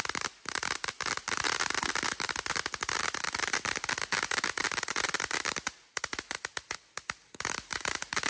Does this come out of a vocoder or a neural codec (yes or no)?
no